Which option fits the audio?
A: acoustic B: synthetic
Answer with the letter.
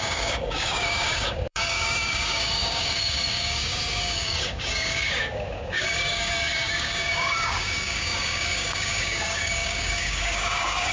B